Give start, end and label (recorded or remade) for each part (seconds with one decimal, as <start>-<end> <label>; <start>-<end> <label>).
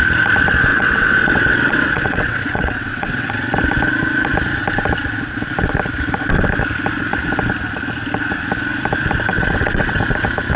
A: 0.0-0.7 recorded; 0.7-3.3 remade; 3.3-9.3 recorded; 9.3-10.0 remade; 10.0-10.6 recorded